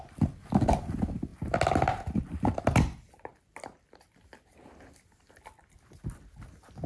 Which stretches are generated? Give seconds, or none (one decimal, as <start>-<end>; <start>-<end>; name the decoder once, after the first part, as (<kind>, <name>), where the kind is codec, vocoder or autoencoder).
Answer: none